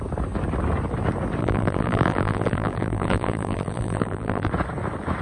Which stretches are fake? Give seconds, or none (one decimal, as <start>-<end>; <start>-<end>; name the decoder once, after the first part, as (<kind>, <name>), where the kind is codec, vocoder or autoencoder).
1.4-4.5 (vocoder, BigVGAN v2)